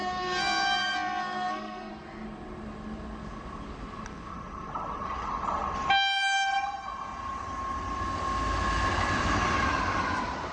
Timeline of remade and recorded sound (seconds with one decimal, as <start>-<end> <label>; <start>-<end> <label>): 0.0-1.9 remade; 1.9-10.5 recorded